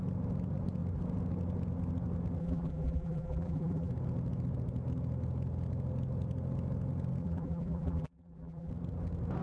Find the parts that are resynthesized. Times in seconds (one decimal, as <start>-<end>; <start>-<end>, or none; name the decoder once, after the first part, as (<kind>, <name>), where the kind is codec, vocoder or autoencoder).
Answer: 2.4-3.9 (vocoder, BigVGAN v2); 7.2-8.7